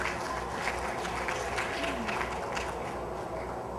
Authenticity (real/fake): real